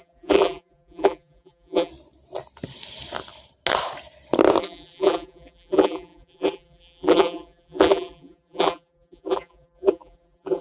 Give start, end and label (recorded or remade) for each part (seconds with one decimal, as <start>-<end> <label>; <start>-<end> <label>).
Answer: 0.0-1.9 remade; 1.9-4.6 recorded; 4.6-10.6 remade